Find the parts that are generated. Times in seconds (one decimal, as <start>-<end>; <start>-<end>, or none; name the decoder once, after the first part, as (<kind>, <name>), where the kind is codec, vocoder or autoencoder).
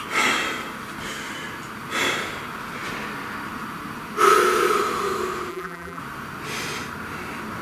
5.5-6.0 (vocoder, BigVGAN v2)